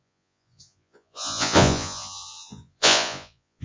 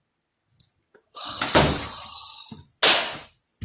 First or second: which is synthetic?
first